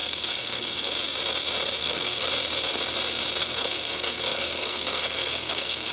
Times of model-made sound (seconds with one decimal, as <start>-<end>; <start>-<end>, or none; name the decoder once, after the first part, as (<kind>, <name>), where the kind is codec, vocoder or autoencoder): 0.0-0.9 (codec, SNAC); 1.8-2.3; 3.4-5.9

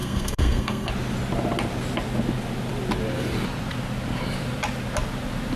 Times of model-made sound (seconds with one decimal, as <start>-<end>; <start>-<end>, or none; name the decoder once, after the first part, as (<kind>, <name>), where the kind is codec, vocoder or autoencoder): 0.0-0.9 (codec, SNAC)

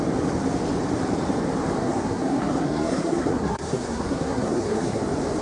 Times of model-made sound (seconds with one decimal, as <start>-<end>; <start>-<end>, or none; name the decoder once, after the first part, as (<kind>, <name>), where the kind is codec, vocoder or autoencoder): 1.8-5.0 (codec, SNAC)

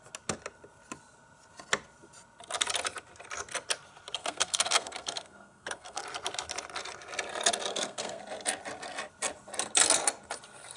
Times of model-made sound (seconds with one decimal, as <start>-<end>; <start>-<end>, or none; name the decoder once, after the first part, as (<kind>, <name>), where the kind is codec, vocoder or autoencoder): 4.2-6.0 (codec, SNAC); 7.7-8.2

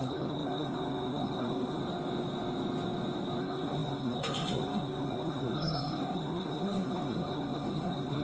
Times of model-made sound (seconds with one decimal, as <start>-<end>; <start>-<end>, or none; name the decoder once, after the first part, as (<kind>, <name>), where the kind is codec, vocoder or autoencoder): 0.0-1.8 (codec, SNAC); 3.4-8.2

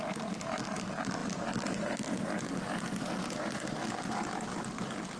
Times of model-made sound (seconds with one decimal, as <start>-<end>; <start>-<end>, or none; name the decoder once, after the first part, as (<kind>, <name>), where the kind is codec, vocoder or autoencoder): none